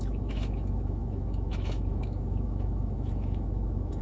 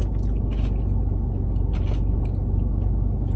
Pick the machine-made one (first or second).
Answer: first